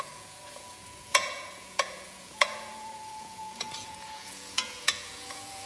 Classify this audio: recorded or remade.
remade